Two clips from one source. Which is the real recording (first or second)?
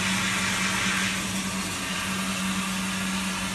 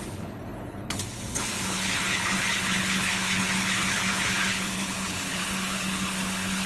first